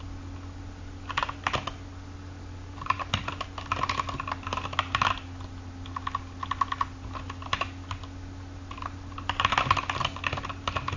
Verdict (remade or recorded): recorded